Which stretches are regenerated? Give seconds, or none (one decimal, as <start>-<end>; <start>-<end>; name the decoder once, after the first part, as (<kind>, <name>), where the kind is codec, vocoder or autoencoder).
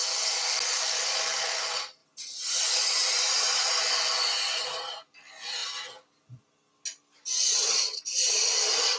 none